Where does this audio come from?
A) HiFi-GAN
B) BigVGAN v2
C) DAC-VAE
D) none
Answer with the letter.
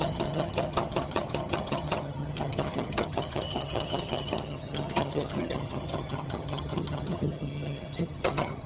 A